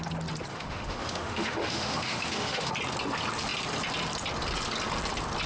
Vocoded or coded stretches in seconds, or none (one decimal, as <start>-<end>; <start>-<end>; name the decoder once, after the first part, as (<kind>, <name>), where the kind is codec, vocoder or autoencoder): 0.5-2.7 (autoencoder, DAC-VAE)